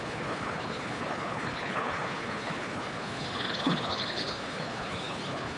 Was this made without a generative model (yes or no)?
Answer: no